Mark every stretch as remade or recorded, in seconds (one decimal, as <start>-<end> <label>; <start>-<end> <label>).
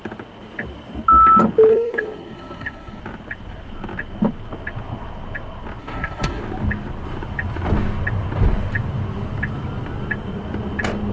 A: 0.0-1.7 recorded; 1.7-3.0 remade; 3.0-5.8 recorded; 5.8-6.4 remade; 6.4-11.1 recorded